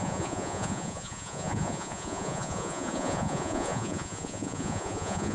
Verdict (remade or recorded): remade